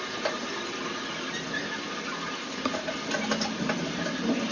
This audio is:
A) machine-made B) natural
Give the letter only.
B